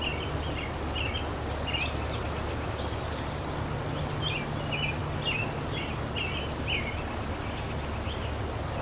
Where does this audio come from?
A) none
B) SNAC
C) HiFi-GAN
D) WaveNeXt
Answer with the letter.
A